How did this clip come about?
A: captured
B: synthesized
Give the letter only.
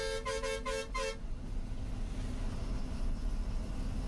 A